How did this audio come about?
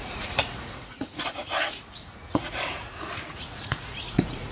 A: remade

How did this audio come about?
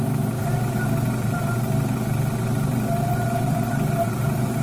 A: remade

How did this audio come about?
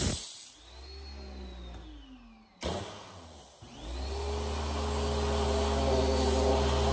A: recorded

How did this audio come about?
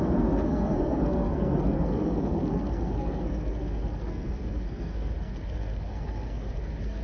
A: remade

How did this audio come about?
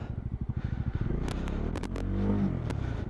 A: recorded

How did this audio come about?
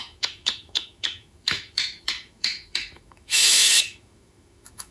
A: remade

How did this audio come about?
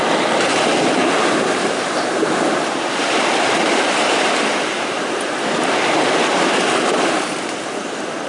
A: recorded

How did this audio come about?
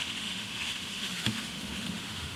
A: remade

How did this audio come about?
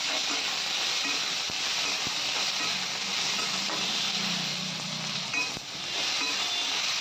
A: remade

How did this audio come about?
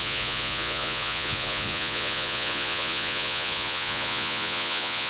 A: remade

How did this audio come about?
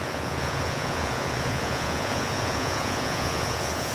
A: remade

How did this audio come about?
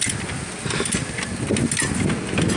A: recorded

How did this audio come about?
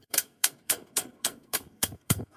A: remade